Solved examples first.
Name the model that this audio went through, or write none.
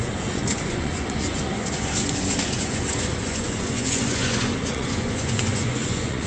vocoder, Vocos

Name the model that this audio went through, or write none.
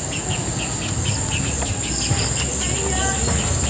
none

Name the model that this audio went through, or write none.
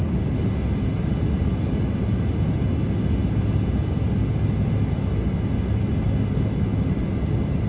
none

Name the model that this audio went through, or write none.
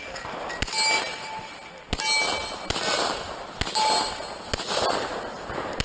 none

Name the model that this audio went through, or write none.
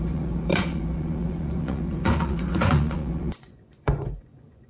vocoder, Vocos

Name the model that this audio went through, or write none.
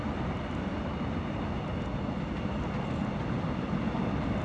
none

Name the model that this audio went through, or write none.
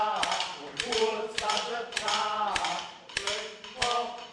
none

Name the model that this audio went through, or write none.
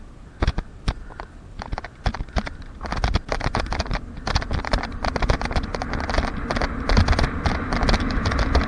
none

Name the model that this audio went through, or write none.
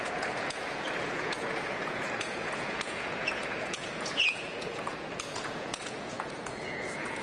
vocoder, Vocos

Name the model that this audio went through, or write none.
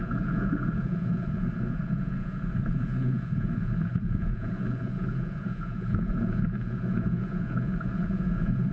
vocoder, Vocos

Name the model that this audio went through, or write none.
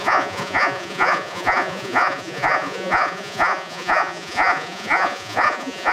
vocoder, Vocos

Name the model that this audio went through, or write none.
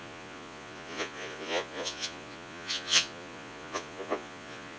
vocoder, Vocos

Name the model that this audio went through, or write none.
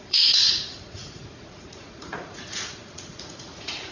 vocoder, Vocos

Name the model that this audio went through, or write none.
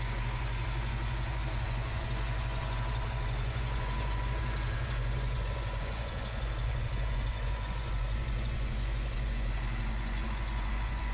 vocoder, Vocos